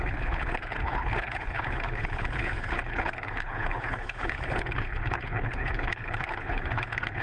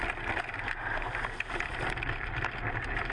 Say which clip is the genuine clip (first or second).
second